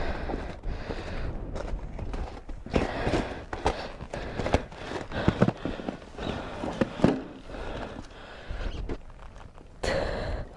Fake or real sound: real